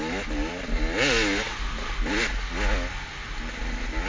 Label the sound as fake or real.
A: real